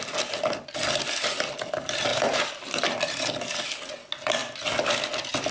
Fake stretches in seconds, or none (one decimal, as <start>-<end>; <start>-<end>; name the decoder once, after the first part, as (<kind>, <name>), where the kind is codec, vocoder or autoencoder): 2.1-2.8 (vocoder, BigVGAN v2)